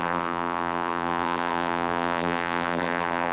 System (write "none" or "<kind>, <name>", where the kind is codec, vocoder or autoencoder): vocoder, BigVGAN v2